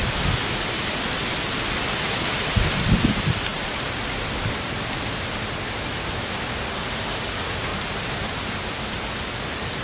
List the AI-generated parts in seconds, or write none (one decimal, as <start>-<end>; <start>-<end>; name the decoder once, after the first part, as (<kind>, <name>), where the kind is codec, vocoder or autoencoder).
3.5-4.8 (vocoder, BigVGAN v2); 7.7-8.8